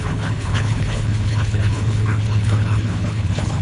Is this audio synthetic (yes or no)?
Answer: yes